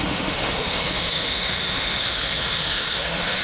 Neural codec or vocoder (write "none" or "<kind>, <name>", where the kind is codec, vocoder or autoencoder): autoencoder, DAC-VAE